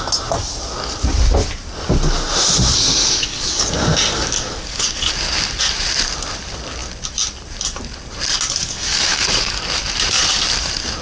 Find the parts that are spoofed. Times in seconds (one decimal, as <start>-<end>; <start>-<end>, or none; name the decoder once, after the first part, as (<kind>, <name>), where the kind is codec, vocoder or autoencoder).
3.0-3.6 (codec, DAC); 4.1-5.1; 8.6-9.6